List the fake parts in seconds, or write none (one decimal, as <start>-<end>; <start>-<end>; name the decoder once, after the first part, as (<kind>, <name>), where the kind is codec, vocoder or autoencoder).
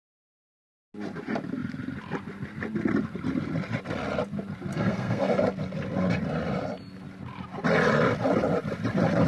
4.7-5.4 (codec, SNAC)